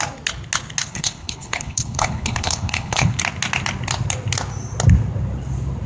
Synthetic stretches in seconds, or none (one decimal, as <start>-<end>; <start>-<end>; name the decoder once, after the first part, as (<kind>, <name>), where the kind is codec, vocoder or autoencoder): 0.8-3.2 (codec, HILCodec)